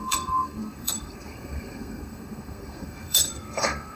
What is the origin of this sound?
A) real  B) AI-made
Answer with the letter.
B